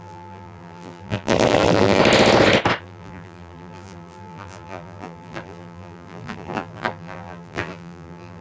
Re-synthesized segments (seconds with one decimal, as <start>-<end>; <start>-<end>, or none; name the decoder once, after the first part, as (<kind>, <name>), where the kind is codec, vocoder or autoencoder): 0.0-2.0 (vocoder, BigVGAN v2); 2.8-8.4